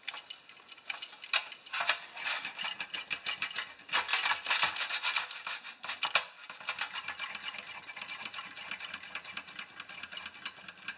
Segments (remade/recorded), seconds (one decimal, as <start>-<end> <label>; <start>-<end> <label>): 0.0-11.0 recorded